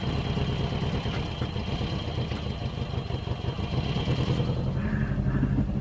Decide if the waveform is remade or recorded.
recorded